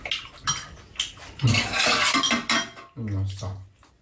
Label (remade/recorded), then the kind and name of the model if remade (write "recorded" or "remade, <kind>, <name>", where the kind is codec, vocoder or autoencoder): recorded